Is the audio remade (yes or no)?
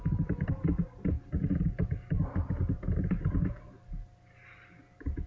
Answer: no